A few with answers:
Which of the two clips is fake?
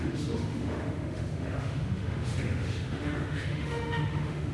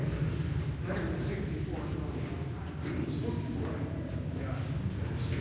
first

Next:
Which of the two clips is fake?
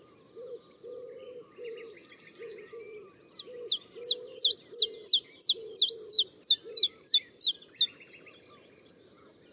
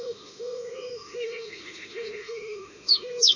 second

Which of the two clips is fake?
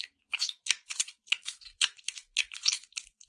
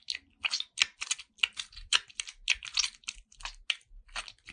first